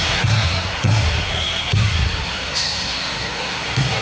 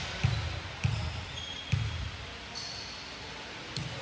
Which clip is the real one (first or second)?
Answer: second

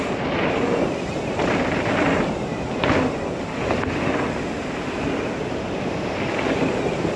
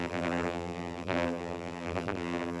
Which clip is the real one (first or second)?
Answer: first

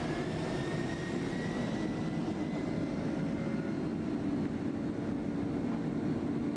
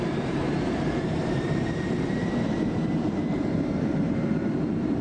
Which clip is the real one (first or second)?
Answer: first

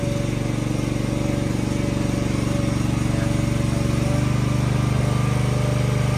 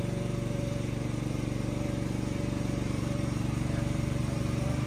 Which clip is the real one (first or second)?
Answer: first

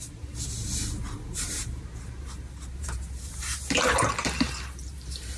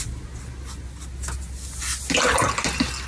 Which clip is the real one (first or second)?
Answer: second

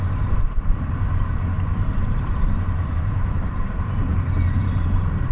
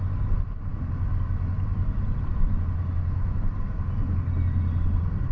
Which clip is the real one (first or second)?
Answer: second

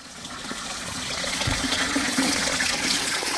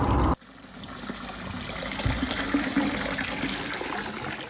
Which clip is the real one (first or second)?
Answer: second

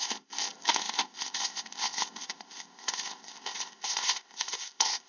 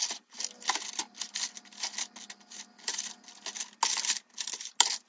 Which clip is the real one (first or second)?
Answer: second